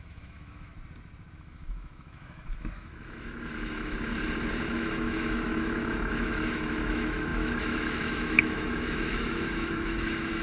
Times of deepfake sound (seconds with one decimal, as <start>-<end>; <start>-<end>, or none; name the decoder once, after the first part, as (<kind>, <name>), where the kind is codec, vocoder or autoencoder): 0.0-0.7 (autoencoder, DAC-VAE); 1.4-4.1; 4.7-10.4